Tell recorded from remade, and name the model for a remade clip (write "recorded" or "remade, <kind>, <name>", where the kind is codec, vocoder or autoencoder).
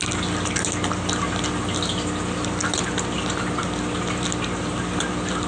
recorded